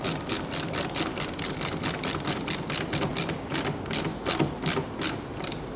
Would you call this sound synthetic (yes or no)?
no